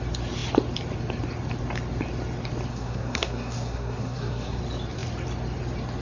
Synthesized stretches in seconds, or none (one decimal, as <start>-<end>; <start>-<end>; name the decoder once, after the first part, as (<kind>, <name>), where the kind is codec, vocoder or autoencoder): 2.7-4.6 (codec, SNAC)